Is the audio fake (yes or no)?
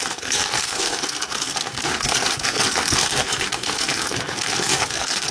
yes